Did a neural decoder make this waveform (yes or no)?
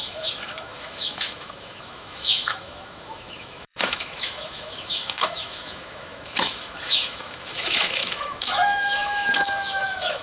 yes